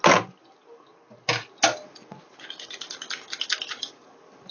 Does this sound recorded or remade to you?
recorded